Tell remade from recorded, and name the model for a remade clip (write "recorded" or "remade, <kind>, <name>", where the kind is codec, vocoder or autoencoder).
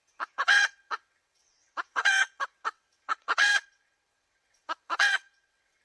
remade, vocoder, WaveNeXt